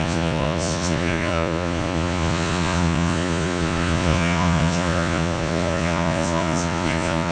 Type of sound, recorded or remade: remade